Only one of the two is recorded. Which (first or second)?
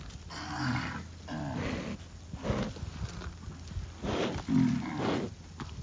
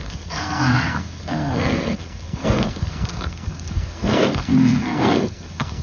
first